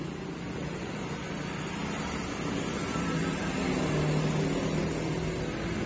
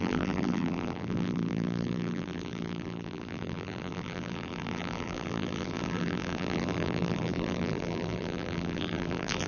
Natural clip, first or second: first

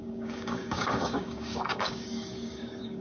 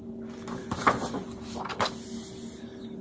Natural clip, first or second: second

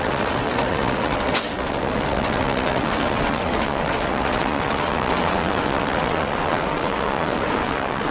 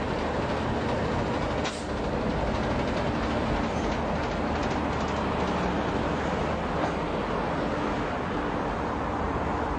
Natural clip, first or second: second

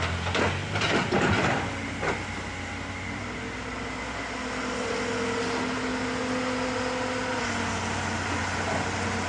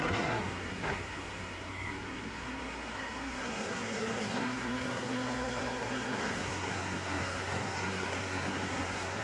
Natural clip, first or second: first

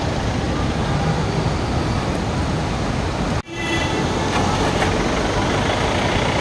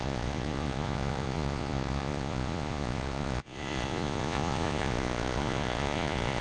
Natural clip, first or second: first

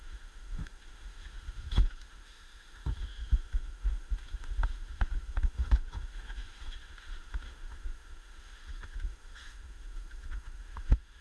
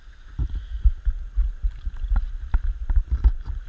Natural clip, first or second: second